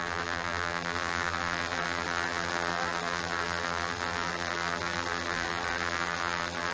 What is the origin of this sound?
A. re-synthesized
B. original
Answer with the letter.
A